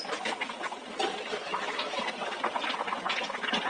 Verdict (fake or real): real